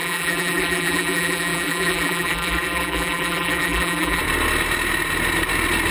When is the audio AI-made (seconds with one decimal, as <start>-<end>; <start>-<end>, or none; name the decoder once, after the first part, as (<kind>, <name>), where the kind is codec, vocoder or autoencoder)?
0.0-4.2 (vocoder, BigVGAN v2)